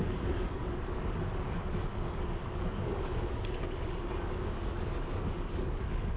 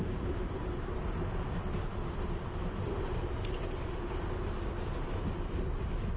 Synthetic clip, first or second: first